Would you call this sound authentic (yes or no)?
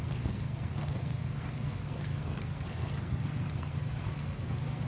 no